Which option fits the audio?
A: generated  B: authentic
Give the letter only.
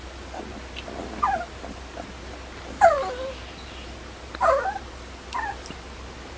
B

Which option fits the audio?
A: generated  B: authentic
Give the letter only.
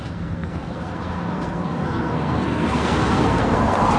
A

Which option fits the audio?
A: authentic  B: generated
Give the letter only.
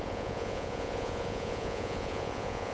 B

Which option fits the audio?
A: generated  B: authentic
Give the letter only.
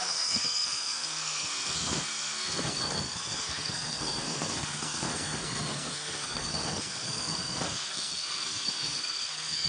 A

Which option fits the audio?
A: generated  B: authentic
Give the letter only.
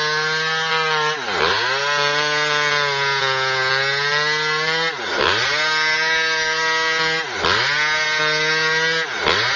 B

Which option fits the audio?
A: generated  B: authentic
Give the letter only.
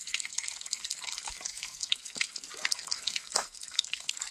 A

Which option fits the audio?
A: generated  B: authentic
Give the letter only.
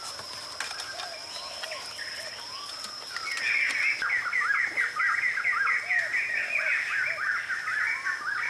B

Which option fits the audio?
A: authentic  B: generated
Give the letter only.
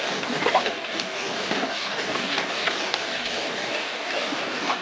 B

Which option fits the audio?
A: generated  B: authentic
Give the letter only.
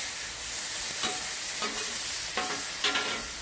B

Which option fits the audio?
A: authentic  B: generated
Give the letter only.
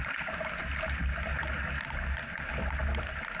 A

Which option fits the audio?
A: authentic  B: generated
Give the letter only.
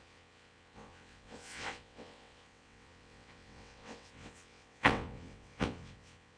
B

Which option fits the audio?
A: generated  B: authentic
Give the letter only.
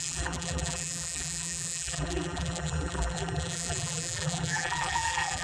A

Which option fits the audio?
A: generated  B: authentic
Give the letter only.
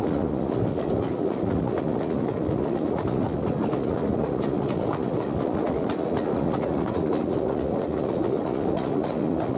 A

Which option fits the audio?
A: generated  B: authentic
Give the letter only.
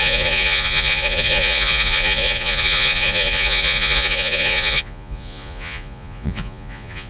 A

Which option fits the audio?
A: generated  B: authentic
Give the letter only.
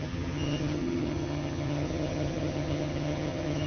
A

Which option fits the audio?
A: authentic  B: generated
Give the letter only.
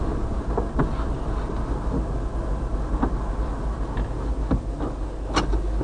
A